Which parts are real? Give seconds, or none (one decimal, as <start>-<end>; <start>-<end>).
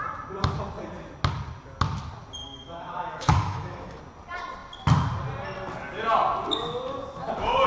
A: 0.0-2.4; 4.0-7.7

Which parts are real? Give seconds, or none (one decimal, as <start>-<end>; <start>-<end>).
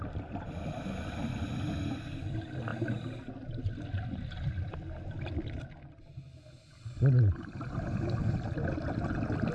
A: 0.0-9.5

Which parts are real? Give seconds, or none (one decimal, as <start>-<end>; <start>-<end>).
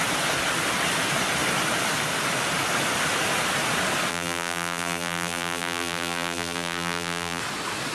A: 0.0-4.1; 7.4-7.9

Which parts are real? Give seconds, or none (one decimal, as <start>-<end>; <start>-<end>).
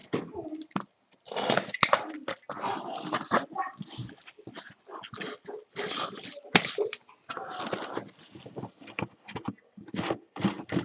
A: 1.3-10.8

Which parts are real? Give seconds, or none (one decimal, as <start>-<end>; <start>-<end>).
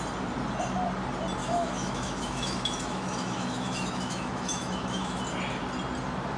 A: 0.0-1.4; 5.2-6.4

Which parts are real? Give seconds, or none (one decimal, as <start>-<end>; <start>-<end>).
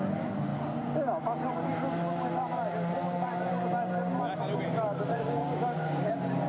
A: 0.0-5.1; 6.1-6.5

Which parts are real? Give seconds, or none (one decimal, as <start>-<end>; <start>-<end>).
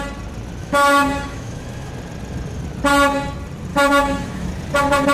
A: 0.0-0.6; 1.9-3.7; 4.5-5.1